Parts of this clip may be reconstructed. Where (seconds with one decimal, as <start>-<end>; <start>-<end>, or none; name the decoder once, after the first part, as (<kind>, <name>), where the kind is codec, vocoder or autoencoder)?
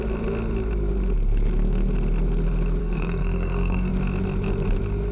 2.8-3.9 (codec, SNAC)